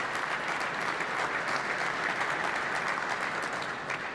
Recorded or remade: recorded